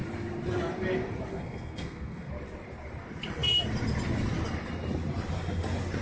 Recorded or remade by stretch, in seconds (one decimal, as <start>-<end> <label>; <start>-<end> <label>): 0.0-1.3 recorded; 1.3-2.3 remade; 2.3-6.0 recorded